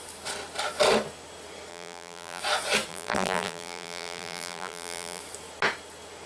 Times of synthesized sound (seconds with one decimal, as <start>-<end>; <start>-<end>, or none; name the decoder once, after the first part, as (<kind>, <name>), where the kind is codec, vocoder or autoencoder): 1.7-2.4 (vocoder, BigVGAN v2); 2.9-5.2